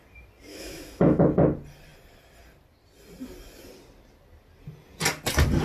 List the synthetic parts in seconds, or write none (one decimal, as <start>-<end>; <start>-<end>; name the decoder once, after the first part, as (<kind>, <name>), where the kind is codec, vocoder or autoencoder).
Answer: 0.5-1.2 (autoencoder, DAC-VAE)